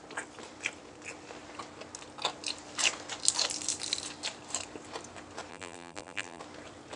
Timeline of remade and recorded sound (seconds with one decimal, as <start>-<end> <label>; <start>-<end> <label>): 0.0-5.5 recorded; 5.5-6.4 remade; 6.4-7.0 recorded